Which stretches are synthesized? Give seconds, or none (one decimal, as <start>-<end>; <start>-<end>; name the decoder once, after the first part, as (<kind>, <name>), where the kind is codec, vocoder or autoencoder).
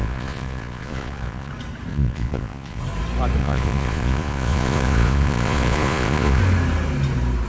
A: 0.0-1.5 (vocoder, Vocos); 1.9-2.8; 3.4-6.4